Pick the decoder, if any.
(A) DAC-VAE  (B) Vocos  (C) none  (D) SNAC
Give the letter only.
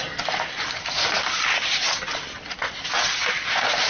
C